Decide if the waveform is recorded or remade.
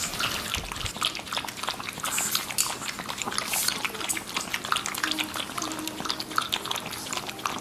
recorded